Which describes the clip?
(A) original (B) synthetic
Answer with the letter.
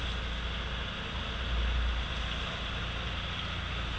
A